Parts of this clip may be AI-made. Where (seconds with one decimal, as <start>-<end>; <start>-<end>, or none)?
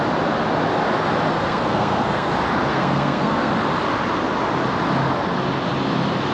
1.3-2.3; 2.7-3.5